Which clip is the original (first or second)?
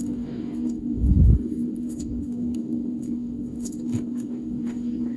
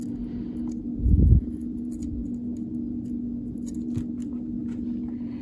second